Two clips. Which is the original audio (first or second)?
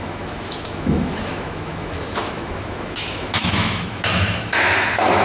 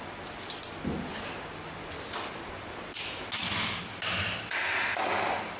second